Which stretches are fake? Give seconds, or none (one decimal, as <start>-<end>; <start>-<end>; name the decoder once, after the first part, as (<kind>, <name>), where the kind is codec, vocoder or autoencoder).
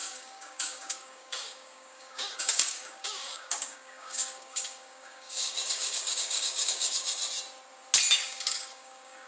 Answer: 0.0-7.2 (codec, DAC); 8.1-9.3